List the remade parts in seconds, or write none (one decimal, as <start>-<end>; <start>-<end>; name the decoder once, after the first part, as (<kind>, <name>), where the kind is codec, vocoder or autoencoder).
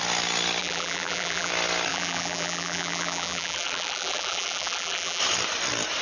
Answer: 0.6-1.5 (vocoder, BigVGAN v2); 1.9-5.2